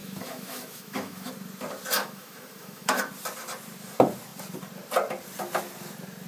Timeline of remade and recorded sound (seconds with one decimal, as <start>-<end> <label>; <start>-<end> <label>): 0.0-1.3 remade; 1.3-2.0 recorded; 2.0-3.1 remade; 3.1-6.3 recorded